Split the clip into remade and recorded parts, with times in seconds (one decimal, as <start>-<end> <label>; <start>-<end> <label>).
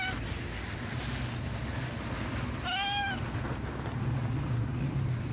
0.0-5.3 recorded